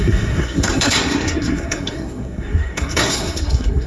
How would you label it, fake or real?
fake